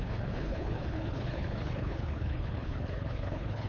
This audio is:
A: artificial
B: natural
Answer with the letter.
A